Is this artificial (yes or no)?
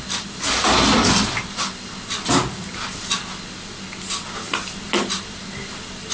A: no